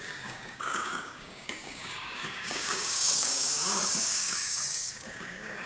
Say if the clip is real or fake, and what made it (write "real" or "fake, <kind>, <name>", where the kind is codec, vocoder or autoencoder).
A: fake, codec, DAC